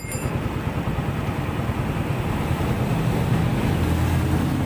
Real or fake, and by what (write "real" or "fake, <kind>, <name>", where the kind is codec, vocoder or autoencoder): real